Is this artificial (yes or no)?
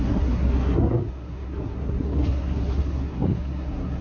yes